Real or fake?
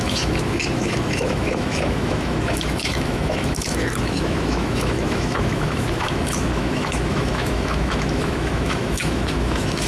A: fake